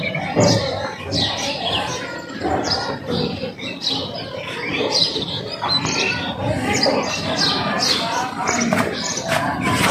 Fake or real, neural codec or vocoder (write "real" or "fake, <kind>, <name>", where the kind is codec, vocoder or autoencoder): fake, vocoder, BigVGAN v2